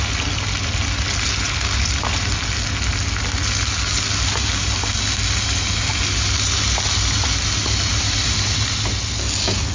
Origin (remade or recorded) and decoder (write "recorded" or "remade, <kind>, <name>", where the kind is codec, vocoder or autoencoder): recorded